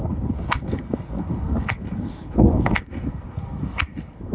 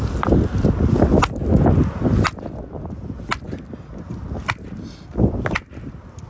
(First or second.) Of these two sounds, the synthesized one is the first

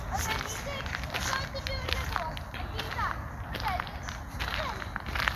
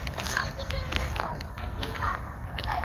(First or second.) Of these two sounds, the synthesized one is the second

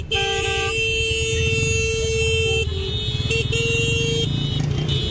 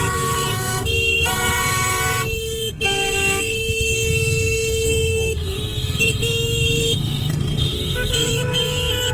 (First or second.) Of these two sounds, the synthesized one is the second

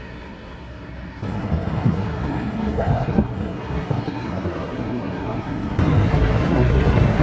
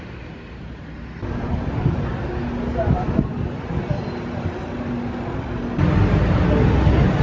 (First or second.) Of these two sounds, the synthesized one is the first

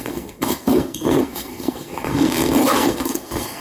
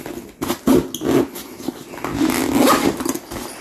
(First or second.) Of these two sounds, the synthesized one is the first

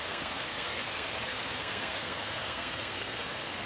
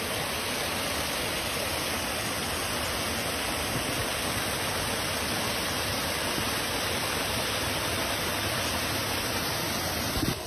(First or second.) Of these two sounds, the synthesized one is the first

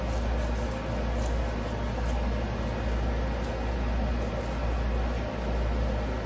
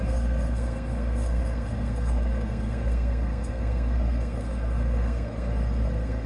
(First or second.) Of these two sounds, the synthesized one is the second